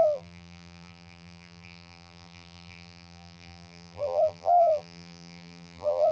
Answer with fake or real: fake